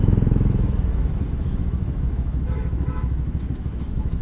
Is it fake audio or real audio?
fake